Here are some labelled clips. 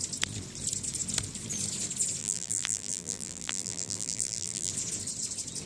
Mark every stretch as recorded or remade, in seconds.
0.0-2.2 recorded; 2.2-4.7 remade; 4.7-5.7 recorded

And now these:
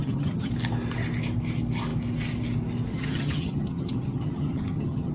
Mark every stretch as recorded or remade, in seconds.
0.0-0.5 remade; 0.5-2.9 recorded; 2.9-5.1 remade

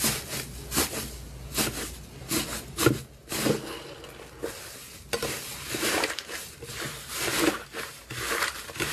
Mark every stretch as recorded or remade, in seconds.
0.0-5.5 recorded; 5.5-8.9 remade